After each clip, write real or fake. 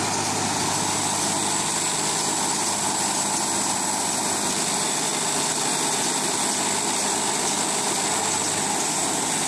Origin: real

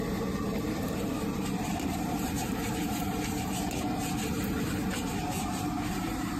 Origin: fake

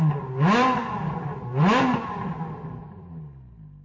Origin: real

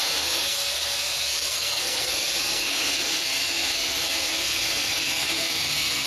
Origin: fake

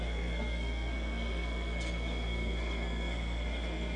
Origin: fake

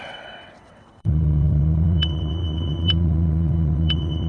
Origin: fake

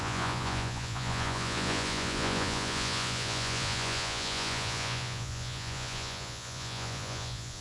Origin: fake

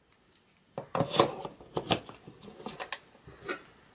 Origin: real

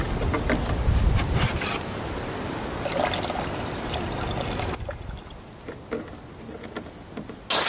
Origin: real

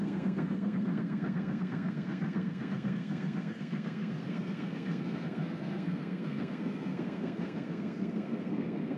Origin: fake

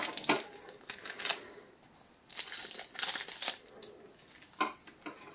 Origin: real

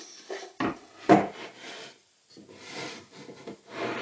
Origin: real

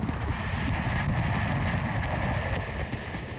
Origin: real